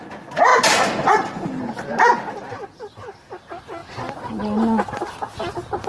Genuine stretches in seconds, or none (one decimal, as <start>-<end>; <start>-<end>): 0.0-0.5; 1.7-5.9